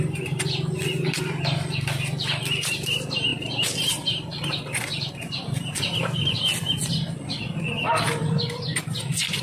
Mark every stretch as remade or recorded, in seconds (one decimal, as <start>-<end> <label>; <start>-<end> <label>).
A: 0.0-9.4 recorded